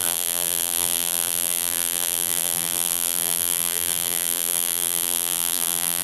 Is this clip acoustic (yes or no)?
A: no